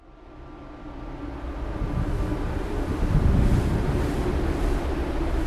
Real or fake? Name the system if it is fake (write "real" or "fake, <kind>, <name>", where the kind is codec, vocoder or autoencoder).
real